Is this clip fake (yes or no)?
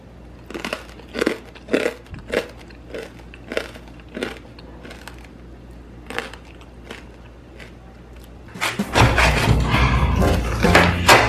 no